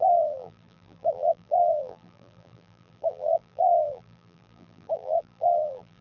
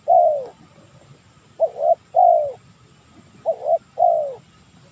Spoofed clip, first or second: first